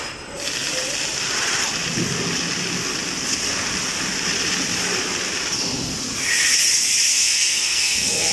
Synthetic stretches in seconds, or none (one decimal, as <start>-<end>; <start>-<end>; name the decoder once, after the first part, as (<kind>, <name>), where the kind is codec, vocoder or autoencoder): 7.1-8.3 (codec, SNAC)